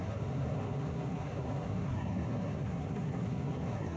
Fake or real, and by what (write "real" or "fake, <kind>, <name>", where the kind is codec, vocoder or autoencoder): fake, codec, SNAC